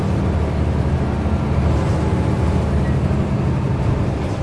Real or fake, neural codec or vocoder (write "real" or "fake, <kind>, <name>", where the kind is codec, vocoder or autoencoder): real